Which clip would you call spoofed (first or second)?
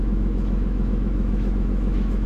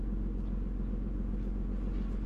first